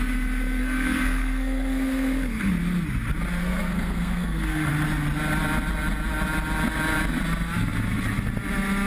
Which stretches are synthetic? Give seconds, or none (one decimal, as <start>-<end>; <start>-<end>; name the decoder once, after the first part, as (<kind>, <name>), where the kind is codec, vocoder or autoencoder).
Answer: 0.6-2.5 (codec, SNAC); 3.4-4.7

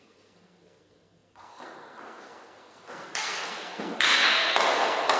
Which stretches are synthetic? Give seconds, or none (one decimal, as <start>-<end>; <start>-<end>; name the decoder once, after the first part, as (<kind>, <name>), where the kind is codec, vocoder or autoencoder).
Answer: 0.0-5.2 (codec, SNAC)